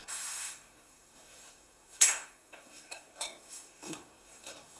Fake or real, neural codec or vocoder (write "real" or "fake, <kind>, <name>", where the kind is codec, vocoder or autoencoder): fake, codec, SNAC